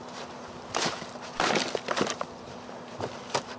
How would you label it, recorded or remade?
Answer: remade